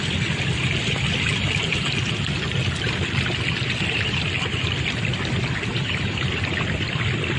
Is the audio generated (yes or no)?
no